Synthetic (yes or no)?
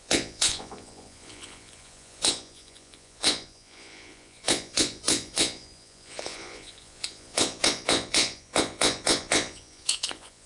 yes